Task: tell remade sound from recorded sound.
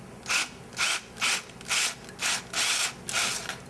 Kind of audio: recorded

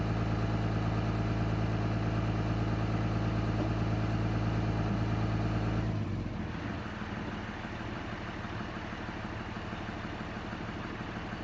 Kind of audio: recorded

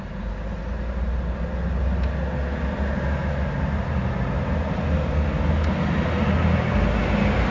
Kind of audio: recorded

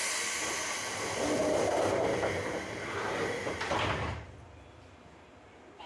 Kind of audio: recorded